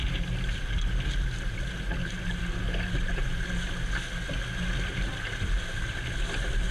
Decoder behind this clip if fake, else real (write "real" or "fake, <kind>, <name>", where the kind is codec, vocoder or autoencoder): real